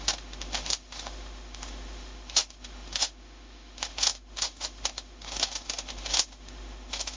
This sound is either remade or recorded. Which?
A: remade